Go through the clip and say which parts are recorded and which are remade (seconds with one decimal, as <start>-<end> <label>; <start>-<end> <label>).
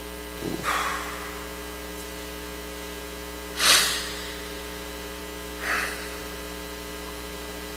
0.0-0.9 remade; 0.9-3.8 recorded; 3.8-5.2 remade; 5.2-6.2 recorded; 6.2-7.8 remade